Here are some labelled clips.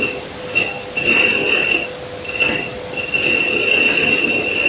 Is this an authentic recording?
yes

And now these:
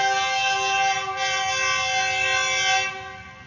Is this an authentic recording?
yes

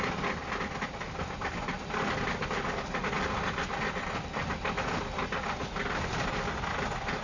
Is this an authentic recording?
yes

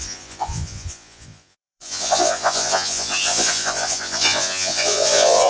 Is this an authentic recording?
no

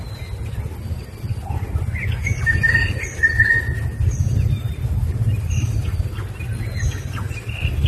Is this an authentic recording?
yes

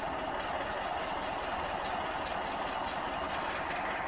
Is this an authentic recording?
yes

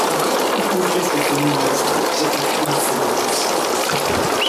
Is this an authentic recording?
yes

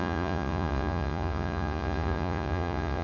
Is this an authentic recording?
no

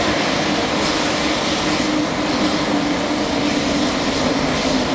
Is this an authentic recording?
yes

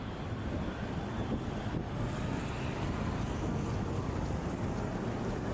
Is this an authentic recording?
yes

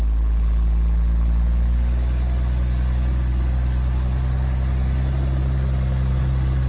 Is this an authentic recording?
yes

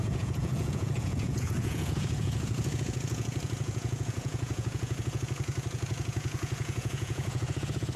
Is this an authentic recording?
no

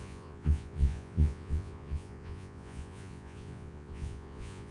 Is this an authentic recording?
no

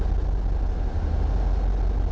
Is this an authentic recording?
yes